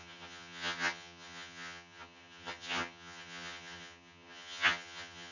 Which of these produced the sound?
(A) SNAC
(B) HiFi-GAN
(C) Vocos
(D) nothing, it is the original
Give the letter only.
B